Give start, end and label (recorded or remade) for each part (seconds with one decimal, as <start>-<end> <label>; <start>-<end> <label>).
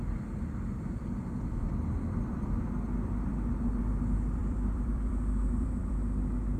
0.0-3.3 recorded; 3.3-3.8 remade; 3.8-4.4 recorded; 4.4-5.9 remade; 5.9-6.6 recorded